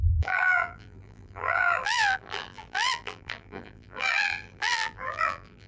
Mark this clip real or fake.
fake